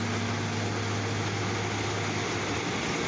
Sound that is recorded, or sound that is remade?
recorded